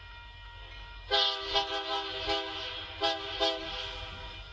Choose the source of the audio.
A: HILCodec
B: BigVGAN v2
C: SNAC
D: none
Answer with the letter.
D